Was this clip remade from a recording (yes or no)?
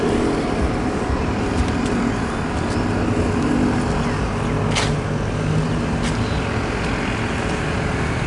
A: no